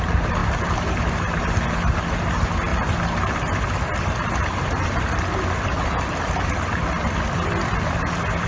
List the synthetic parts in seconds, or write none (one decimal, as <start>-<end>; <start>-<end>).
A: none